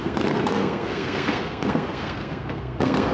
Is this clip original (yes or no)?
no